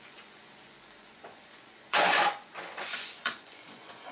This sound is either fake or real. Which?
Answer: fake